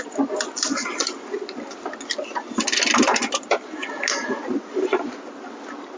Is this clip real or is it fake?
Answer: real